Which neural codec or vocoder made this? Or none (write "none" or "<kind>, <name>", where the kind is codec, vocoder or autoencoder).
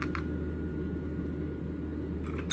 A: none